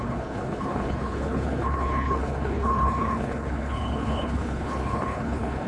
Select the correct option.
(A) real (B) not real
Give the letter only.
B